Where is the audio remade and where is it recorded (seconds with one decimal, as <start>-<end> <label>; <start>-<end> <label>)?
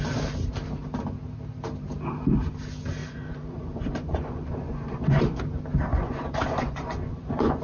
0.0-3.0 recorded; 3.0-5.4 remade; 5.4-5.9 recorded; 5.9-7.6 remade